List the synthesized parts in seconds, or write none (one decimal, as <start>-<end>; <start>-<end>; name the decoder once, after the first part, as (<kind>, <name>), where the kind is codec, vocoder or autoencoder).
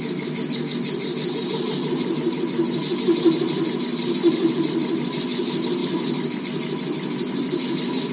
3.9-4.5 (vocoder, BigVGAN v2)